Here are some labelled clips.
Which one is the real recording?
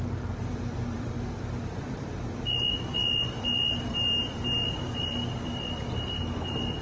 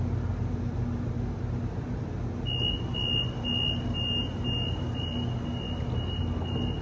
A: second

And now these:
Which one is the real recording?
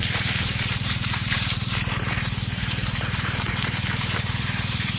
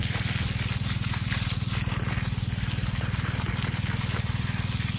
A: second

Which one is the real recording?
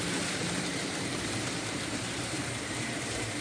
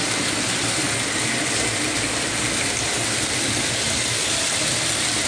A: second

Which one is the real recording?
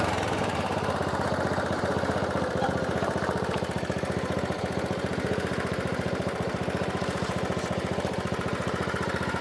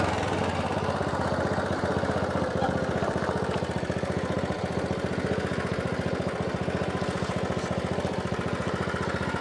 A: second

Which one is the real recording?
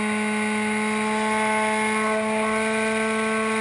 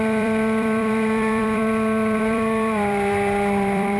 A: first